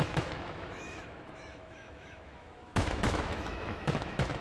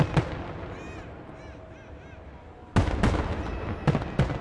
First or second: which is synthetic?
first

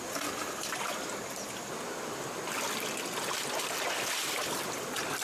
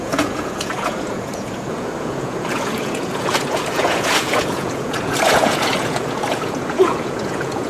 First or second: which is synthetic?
second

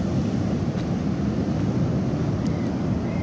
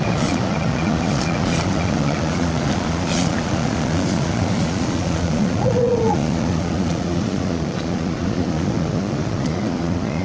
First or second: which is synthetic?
second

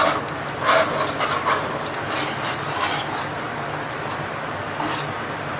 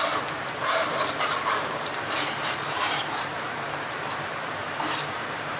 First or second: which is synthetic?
second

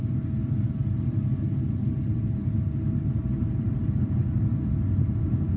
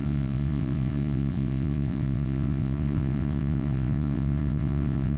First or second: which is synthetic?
second